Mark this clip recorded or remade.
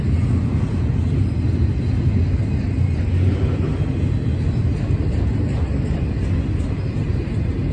recorded